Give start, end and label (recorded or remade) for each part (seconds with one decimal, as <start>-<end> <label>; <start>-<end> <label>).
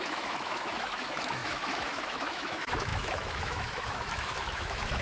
0.0-5.0 remade